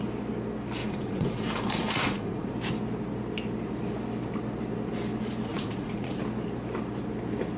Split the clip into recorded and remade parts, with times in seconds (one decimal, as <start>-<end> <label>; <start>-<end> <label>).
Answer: 0.0-0.8 recorded; 0.8-2.5 remade; 2.5-5.5 recorded; 5.5-6.2 remade; 6.2-7.6 recorded